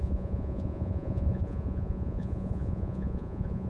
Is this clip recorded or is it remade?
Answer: remade